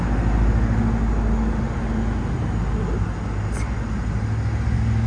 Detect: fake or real real